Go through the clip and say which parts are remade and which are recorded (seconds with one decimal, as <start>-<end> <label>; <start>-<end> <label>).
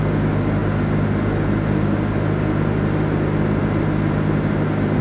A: 0.0-5.0 recorded